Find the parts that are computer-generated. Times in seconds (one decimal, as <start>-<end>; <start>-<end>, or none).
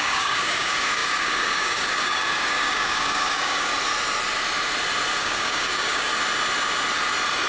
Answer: 0.0-3.7; 5.2-6.1